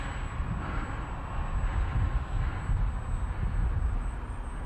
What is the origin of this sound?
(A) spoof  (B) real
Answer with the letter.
B